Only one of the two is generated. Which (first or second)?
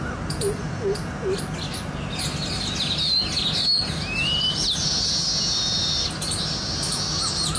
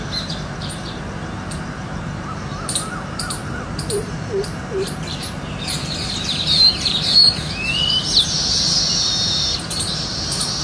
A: second